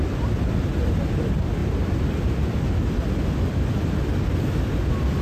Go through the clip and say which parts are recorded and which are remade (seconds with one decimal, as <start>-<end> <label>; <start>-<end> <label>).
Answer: 0.0-5.2 recorded